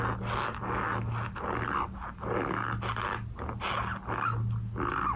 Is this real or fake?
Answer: real